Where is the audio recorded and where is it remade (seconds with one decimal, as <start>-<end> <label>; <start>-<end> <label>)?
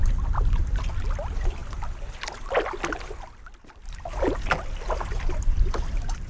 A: 0.0-6.3 recorded